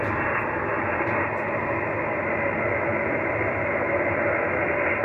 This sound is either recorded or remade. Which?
recorded